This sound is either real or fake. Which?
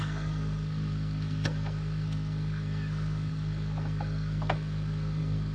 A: fake